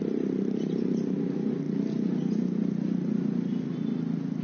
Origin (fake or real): real